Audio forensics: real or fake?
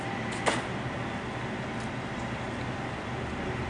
real